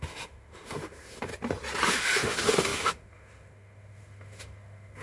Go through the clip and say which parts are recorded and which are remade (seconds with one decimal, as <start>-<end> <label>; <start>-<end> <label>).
0.0-1.3 remade; 1.3-1.9 recorded; 1.9-5.0 remade